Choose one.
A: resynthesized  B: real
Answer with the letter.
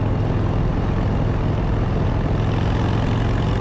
B